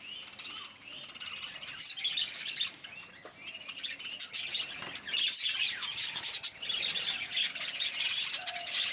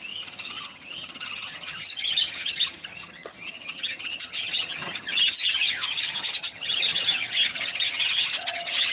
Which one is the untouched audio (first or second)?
first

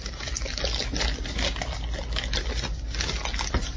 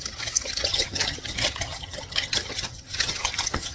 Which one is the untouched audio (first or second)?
first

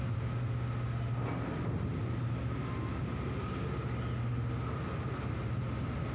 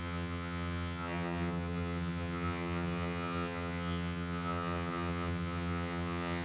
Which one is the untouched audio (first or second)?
first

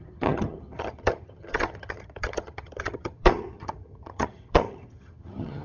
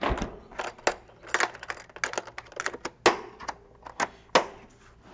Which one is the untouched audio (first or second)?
second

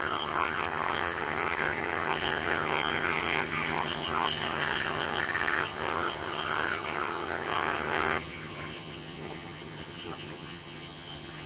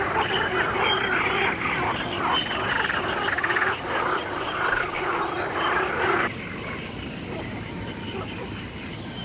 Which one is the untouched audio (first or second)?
second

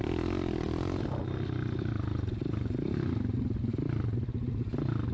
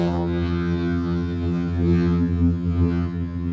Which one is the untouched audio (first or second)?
first